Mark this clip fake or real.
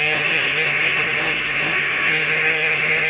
fake